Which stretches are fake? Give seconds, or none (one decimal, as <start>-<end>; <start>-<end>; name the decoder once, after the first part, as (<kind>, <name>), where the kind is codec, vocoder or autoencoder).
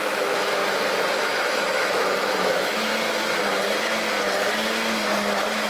0.0-0.6 (autoencoder, DAC-VAE); 1.2-2.9